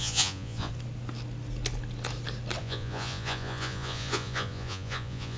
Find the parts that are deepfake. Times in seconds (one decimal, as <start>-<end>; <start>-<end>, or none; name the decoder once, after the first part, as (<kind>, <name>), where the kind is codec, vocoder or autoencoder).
0.0-0.7 (vocoder, Vocos); 2.6-5.4